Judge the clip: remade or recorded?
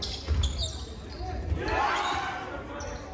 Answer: recorded